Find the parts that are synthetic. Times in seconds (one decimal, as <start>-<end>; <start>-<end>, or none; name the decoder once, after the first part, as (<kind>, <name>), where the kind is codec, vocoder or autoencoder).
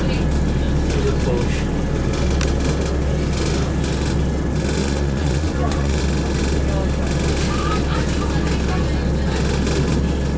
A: 4.8-6.0 (vocoder, Vocos)